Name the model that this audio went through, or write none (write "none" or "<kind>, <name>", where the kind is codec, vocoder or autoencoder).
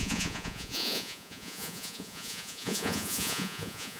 vocoder, Vocos